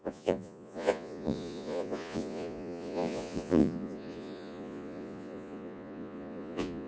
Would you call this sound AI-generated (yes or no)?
yes